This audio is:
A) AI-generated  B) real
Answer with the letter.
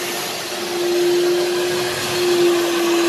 B